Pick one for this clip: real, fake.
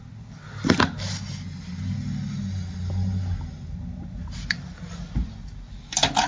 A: real